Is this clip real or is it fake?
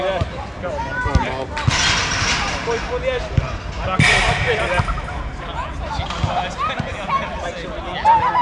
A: real